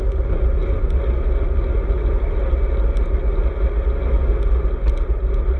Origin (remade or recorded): recorded